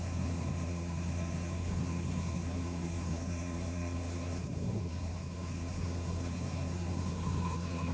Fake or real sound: fake